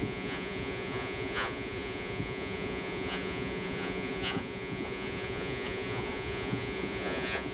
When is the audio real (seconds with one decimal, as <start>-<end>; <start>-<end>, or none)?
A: none